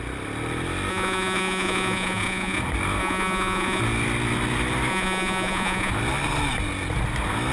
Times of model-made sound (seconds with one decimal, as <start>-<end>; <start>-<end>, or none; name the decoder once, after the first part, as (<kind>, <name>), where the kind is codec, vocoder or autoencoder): 0.9-2.6 (vocoder, Vocos); 3.0-3.8; 4.9-5.9